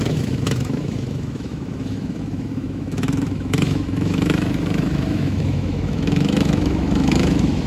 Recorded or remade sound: remade